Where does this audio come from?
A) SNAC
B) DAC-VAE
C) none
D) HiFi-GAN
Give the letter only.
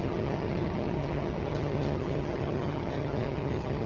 D